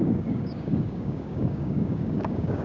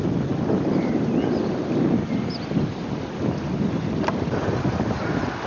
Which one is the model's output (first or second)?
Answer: first